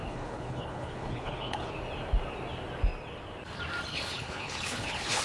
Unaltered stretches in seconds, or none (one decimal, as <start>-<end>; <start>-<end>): 1.7-3.9